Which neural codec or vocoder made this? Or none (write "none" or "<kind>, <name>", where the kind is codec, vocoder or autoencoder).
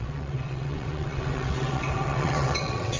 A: vocoder, WaveNeXt